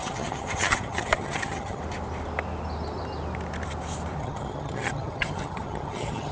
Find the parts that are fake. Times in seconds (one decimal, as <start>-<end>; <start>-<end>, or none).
0.0-1.8; 4.2-6.3